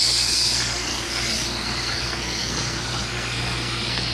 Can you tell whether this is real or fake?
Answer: fake